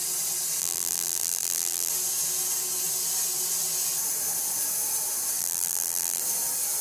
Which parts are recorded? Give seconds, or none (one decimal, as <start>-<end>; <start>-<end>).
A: 0.0-0.6; 1.9-5.4; 6.2-6.8